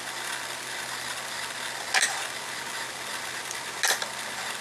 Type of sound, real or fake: real